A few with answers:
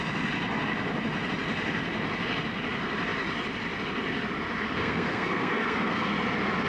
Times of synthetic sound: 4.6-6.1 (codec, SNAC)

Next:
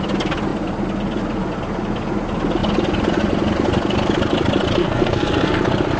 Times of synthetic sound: 4.8-5.6 (codec, SNAC)

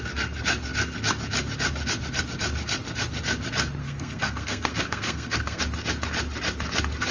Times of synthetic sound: 3.8-5.6 (codec, SNAC)

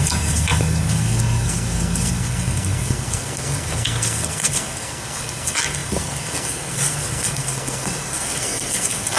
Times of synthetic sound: 0.0-9.2 (codec, SNAC)

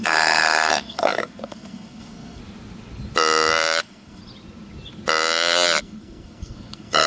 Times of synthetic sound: 0.0-2.4 (codec, SNAC); 3.8-4.2; 5.8-7.1

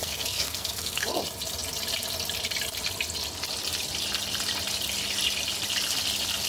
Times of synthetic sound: 0.0-1.2 (codec, SNAC)